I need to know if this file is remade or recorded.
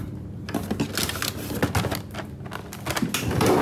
recorded